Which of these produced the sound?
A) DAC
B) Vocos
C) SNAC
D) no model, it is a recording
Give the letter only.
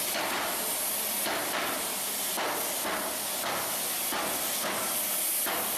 D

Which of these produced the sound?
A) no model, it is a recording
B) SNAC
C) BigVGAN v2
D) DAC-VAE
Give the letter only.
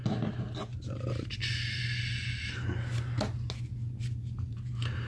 A